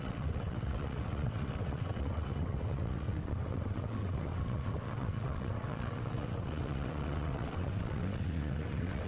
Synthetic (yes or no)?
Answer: yes